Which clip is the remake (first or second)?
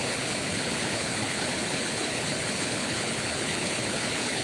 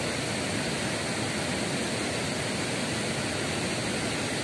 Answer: first